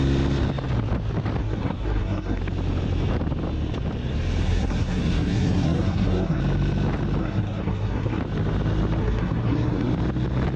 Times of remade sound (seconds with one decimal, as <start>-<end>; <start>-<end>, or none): 1.4-2.4; 4.4-6.4; 7.2-8.2; 9.0-9.9